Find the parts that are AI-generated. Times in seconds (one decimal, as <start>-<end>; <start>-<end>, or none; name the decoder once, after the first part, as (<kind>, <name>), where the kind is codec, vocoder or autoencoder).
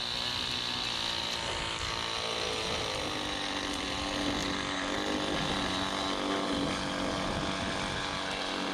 none